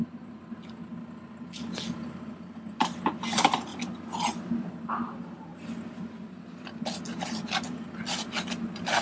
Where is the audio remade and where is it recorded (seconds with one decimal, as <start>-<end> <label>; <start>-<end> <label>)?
0.0-9.0 recorded

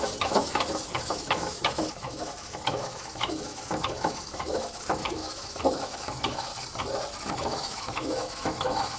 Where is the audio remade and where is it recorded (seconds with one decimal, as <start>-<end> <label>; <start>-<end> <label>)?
0.0-6.5 remade; 6.5-7.4 recorded; 7.4-9.0 remade

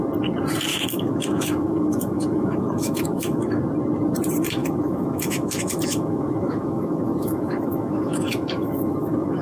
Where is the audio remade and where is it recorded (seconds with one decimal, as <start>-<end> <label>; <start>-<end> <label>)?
0.0-0.7 recorded; 0.7-3.6 remade; 3.6-4.6 recorded; 4.6-9.4 remade

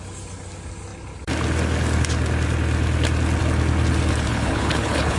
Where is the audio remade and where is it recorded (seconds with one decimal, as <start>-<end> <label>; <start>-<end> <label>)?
0.0-4.3 recorded; 4.3-5.2 remade